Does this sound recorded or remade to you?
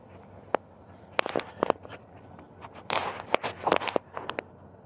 recorded